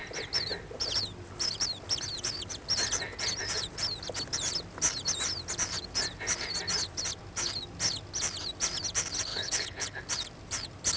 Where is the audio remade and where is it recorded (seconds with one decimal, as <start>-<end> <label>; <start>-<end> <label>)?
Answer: 0.0-9.3 recorded; 9.3-10.0 remade; 10.0-11.0 recorded